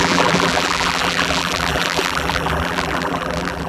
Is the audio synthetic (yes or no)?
yes